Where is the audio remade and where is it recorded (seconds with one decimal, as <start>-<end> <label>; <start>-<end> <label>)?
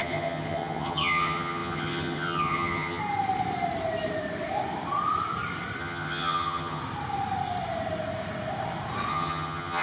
0.0-3.0 remade; 3.0-5.8 recorded; 5.8-6.8 remade; 6.8-9.1 recorded; 9.1-9.8 remade